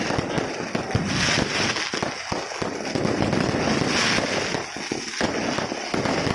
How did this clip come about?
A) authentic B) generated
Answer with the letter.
A